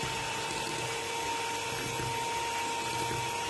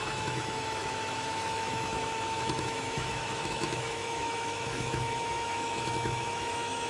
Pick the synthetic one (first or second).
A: second